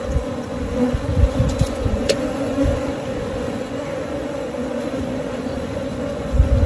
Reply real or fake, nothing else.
fake